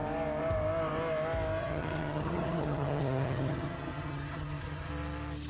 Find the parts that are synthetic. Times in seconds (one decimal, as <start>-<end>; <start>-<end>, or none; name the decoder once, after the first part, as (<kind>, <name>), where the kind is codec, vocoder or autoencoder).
1.6-4.9 (vocoder, HiFi-GAN)